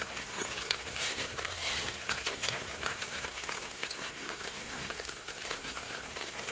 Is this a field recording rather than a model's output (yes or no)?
no